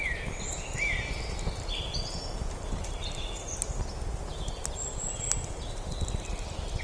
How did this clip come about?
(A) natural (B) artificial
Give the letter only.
A